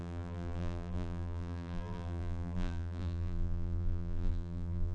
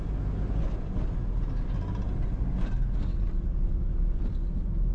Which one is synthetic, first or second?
first